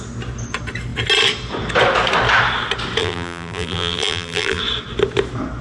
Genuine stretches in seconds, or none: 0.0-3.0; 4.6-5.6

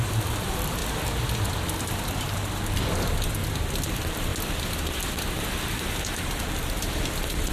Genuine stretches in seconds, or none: 0.8-2.2; 3.4-3.9; 4.3-5.6

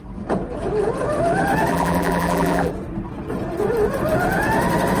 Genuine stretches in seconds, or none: 0.0-1.7; 2.7-5.0

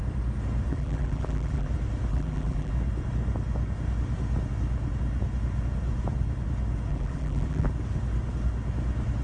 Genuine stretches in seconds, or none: 0.0-0.7; 1.7-2.1; 2.7-6.9; 7.7-9.2

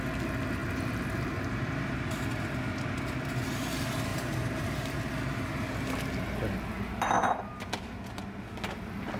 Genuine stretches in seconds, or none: 0.0-0.6; 1.9-4.1; 5.0-9.2

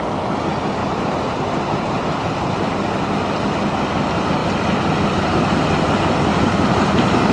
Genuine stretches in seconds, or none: 0.0-0.8; 2.8-6.3